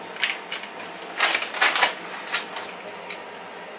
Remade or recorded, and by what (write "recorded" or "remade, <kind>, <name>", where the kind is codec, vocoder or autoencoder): recorded